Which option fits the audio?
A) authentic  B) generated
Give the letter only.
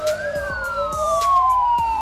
B